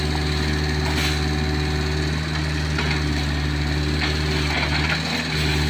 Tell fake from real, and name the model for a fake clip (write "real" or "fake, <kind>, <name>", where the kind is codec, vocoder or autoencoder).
real